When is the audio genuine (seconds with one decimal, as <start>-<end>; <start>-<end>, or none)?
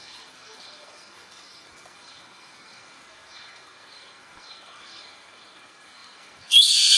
none